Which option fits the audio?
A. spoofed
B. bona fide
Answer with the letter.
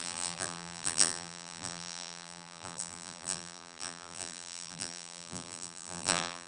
A